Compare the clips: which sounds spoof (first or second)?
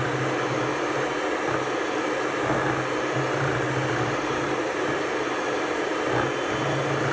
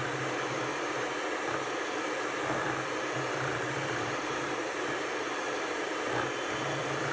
second